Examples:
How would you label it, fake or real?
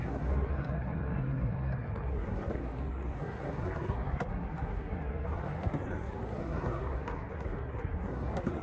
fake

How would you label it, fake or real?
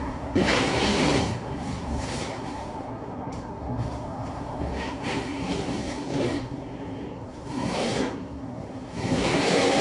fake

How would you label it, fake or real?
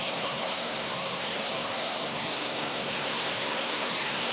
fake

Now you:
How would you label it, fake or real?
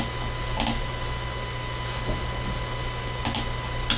real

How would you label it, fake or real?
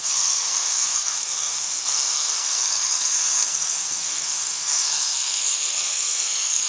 fake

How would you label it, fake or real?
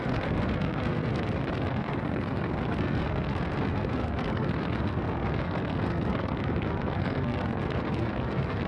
fake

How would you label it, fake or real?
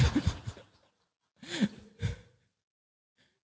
real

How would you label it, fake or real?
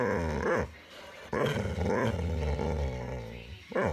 real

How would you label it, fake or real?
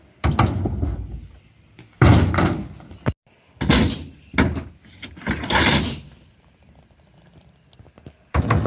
real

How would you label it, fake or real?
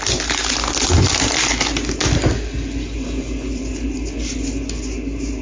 real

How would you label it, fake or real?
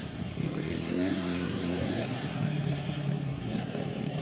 fake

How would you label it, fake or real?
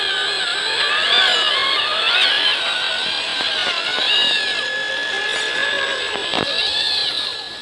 real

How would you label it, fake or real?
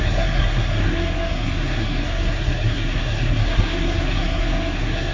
fake